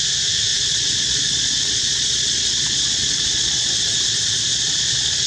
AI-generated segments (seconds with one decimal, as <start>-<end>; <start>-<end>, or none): 0.5-3.7; 4.5-5.3